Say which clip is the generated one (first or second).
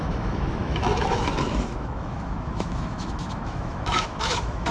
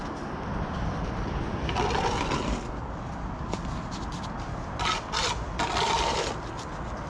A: first